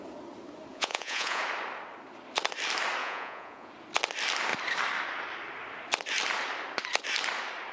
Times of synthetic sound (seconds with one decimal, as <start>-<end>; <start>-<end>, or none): 0.7-1.4; 3.0-3.7